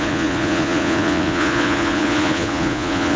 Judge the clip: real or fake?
fake